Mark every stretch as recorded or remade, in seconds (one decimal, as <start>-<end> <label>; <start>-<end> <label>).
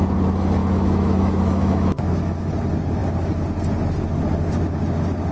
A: 0.0-0.6 recorded; 0.6-2.5 remade; 2.5-5.3 recorded